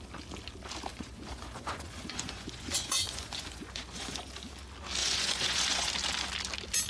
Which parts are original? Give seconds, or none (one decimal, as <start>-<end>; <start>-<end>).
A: 0.0-0.9; 4.3-5.0; 5.9-6.9